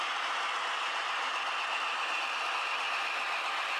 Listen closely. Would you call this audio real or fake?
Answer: real